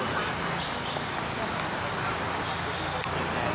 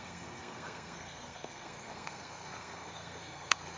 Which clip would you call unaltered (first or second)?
first